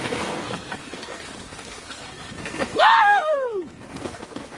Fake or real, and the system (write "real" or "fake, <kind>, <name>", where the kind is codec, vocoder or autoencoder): fake, codec, SNAC